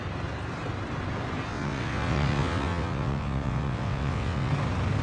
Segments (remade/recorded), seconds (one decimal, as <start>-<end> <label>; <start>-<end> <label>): 0.0-1.5 recorded; 1.5-4.5 remade; 4.5-5.0 recorded